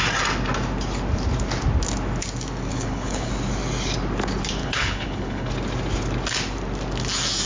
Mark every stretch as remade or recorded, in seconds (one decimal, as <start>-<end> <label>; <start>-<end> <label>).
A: 0.0-2.7 recorded; 2.7-3.3 remade; 3.3-4.6 recorded; 4.6-5.5 remade; 5.5-7.5 recorded